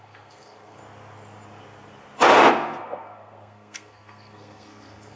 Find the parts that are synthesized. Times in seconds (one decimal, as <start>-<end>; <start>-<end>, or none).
0.0-0.8; 2.5-5.2